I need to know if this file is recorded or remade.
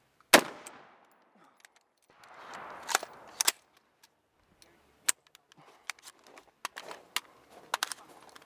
recorded